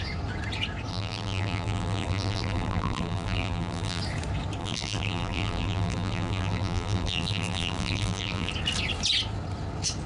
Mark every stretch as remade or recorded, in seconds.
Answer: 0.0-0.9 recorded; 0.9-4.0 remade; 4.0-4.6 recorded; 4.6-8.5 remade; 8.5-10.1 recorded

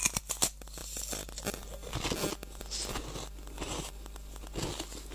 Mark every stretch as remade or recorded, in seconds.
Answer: 0.0-5.1 recorded

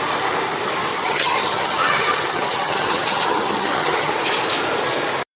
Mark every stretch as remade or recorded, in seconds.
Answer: 0.0-0.9 recorded; 0.9-4.1 remade; 4.1-5.4 recorded

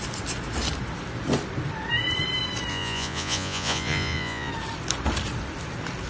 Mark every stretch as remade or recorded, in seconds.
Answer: 0.0-2.7 recorded; 2.7-4.5 remade; 4.5-6.1 recorded

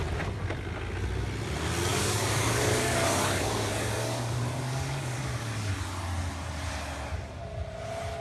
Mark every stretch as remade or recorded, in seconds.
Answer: 0.0-1.9 recorded; 1.9-5.7 remade; 5.7-8.2 recorded

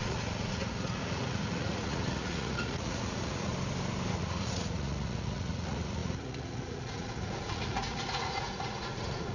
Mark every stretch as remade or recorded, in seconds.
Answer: 0.0-3.5 remade; 3.5-4.1 recorded; 4.1-9.3 remade